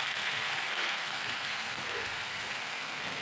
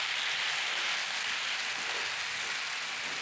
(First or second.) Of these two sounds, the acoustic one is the second